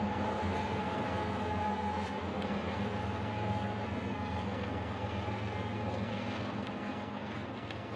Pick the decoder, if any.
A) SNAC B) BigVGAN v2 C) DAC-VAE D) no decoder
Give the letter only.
A